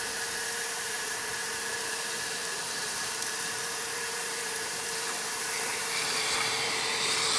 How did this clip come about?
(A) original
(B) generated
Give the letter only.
B